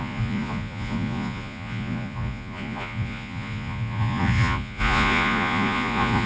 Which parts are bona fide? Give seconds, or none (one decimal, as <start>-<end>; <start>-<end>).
none